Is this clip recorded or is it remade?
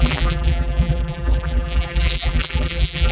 remade